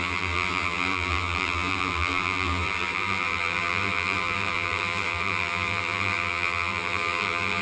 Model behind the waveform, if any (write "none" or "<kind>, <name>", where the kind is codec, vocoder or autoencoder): vocoder, BigVGAN v2